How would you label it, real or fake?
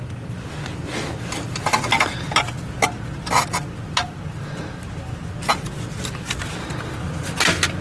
real